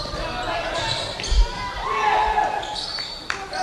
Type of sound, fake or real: fake